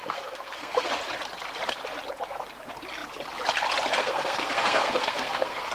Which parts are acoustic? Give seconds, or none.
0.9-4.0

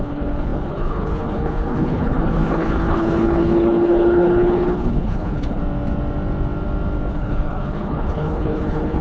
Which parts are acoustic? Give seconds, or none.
5.6-7.1

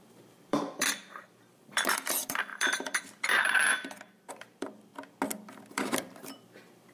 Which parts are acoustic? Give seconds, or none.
4.9-5.7

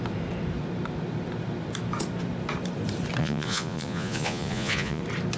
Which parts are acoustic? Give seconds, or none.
0.0-3.2; 5.0-5.4

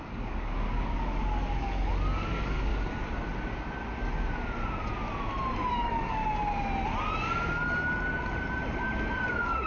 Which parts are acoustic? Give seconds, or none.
2.7-5.7; 6.2-9.7

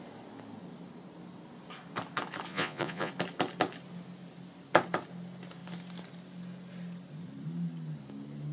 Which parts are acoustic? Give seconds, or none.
0.0-2.5; 3.1-8.5

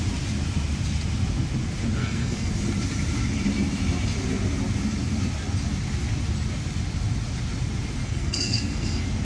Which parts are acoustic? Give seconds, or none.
0.0-2.0; 2.5-8.0